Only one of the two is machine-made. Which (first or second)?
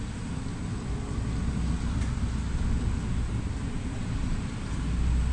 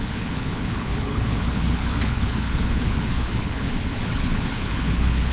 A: second